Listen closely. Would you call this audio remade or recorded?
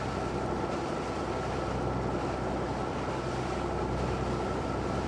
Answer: recorded